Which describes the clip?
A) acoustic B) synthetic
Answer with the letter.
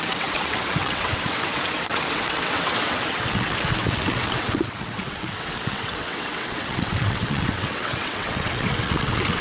B